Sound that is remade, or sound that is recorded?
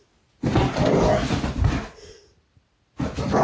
recorded